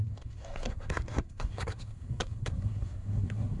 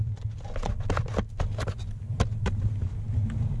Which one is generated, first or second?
first